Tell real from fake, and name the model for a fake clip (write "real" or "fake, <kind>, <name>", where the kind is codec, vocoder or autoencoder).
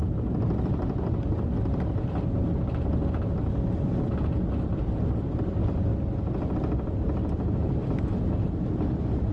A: real